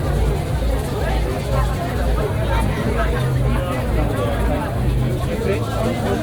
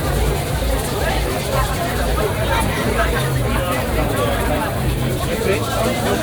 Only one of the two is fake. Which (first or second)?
second